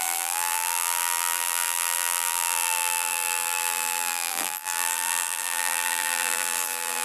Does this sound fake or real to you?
fake